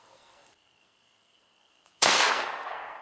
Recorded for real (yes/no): no